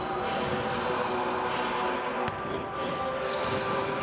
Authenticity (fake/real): real